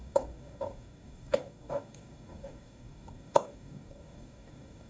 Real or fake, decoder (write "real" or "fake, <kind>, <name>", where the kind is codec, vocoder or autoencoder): fake, codec, DAC